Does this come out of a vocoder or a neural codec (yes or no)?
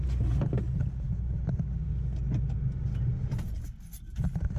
no